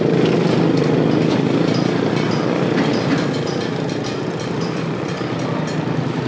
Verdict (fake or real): real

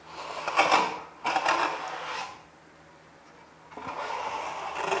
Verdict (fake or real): real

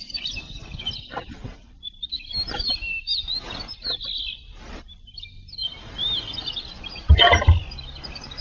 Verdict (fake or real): fake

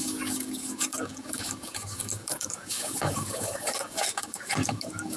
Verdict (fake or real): fake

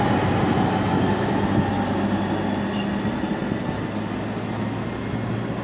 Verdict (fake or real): real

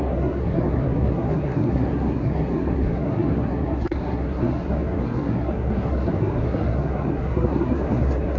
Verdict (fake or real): fake